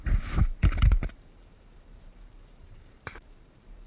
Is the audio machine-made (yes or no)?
yes